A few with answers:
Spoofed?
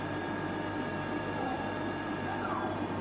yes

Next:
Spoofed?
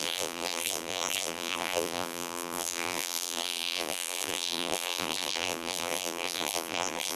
yes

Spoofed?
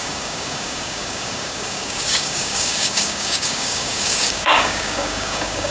yes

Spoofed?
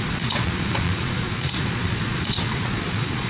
yes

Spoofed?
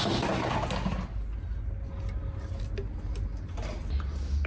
no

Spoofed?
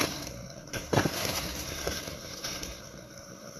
yes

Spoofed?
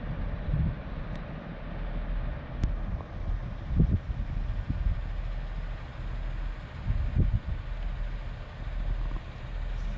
no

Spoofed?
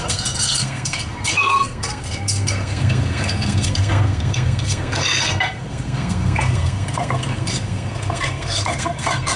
yes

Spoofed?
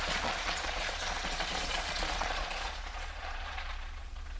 yes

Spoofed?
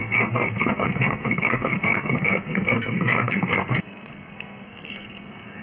yes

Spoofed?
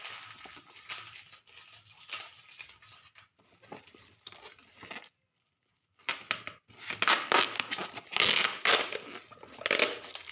no